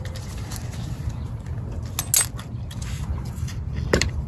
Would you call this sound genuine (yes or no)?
yes